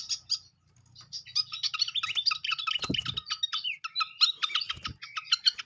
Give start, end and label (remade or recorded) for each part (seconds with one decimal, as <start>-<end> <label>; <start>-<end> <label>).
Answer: 0.0-5.7 recorded